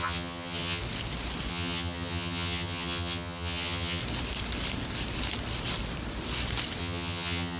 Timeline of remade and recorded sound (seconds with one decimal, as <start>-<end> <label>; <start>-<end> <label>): 0.0-0.8 remade; 0.8-1.5 recorded; 1.5-4.0 remade; 4.0-6.8 recorded; 6.8-7.6 remade

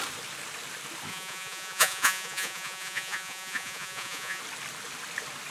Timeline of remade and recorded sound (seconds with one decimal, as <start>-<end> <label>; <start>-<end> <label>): 0.0-1.1 recorded; 1.1-4.4 remade; 4.4-5.5 recorded

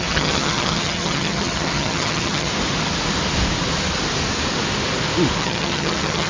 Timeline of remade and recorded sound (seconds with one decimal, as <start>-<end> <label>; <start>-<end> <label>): 0.0-2.5 remade; 2.5-5.4 recorded; 5.4-6.3 remade